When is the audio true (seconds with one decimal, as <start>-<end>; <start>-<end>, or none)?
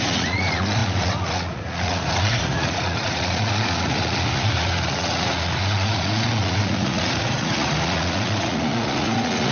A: none